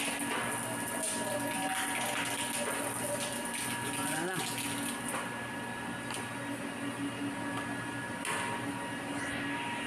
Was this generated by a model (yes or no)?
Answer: no